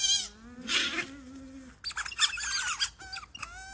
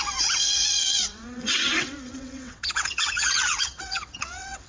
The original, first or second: first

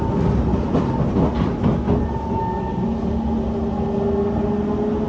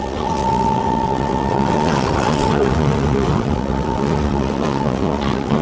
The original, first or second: first